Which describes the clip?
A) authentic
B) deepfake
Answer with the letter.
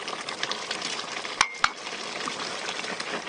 A